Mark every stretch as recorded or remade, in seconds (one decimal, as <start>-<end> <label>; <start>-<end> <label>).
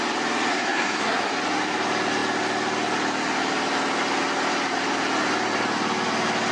0.0-0.5 recorded; 0.5-1.3 remade; 1.3-6.5 recorded